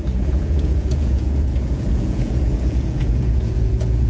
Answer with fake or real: fake